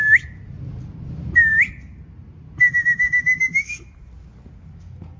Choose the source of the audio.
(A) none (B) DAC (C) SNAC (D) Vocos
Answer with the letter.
A